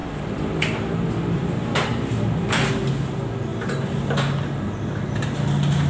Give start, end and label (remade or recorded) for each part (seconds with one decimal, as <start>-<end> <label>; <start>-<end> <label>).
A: 0.0-0.9 remade; 0.9-3.5 recorded; 3.5-5.5 remade; 5.5-5.9 recorded